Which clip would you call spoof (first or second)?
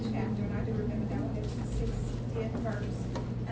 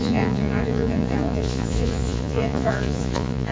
second